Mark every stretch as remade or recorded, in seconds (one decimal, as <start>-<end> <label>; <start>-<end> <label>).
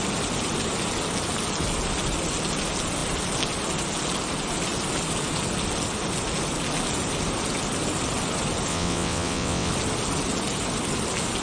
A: 0.0-8.7 recorded; 8.7-9.7 remade; 9.7-11.4 recorded